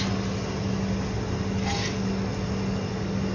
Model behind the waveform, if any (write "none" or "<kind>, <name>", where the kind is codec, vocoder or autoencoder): none